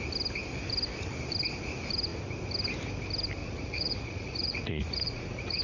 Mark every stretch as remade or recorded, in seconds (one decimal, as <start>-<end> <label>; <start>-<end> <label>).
0.0-3.4 recorded; 3.4-5.6 remade